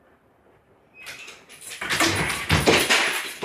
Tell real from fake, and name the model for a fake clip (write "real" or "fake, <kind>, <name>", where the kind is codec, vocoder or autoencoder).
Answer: fake, vocoder, BigVGAN v2